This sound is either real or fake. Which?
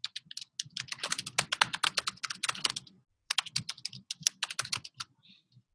real